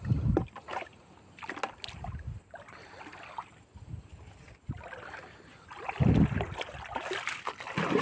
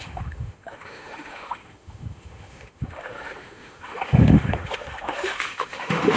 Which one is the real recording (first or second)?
first